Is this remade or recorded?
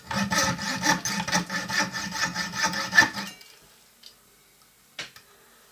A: recorded